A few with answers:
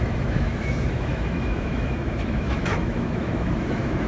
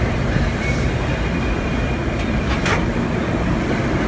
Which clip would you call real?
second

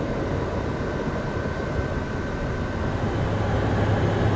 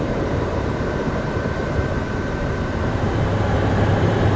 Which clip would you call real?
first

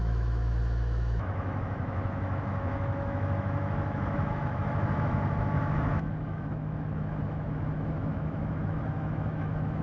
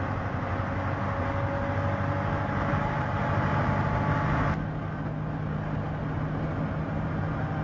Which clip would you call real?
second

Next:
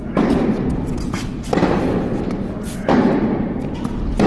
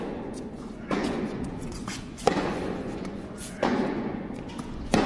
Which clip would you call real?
first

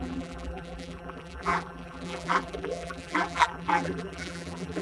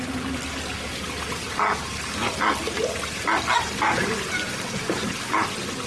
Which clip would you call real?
second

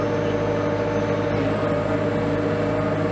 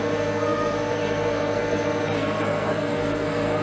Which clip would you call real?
first